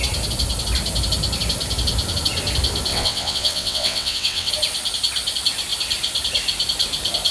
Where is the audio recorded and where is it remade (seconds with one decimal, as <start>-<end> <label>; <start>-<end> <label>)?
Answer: 0.0-2.9 recorded; 2.9-4.5 remade; 4.5-7.3 recorded